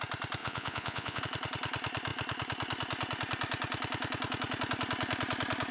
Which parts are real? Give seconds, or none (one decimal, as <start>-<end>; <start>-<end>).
0.0-0.4; 1.2-5.7

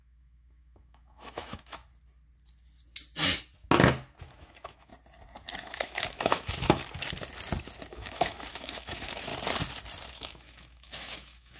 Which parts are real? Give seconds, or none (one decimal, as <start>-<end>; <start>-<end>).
1.8-4.2; 4.9-5.6; 6.8-7.9; 9.3-10.1